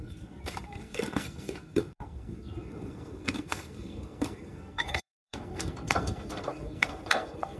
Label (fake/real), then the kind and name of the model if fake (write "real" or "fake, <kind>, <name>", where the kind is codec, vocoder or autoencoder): fake, codec, SNAC